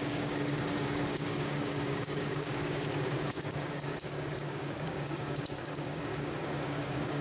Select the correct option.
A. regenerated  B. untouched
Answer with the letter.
A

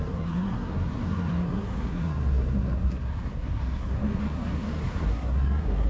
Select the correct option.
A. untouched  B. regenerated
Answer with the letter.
B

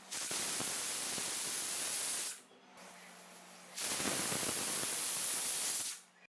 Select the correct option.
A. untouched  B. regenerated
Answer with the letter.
A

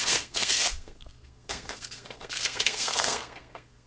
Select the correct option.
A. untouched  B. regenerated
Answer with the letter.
B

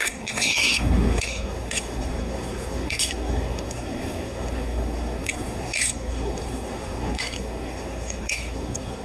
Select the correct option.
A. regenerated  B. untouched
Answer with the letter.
A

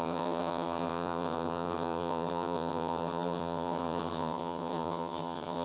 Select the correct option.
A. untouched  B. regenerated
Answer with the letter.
B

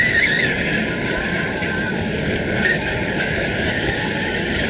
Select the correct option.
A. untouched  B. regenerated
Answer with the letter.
B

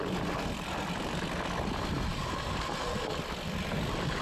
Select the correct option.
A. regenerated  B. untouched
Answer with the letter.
B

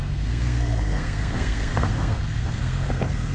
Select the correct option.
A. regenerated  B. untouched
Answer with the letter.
A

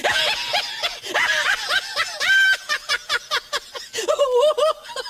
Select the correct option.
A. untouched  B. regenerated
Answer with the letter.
A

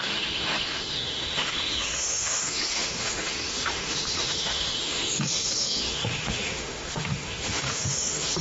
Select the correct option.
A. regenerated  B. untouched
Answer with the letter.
A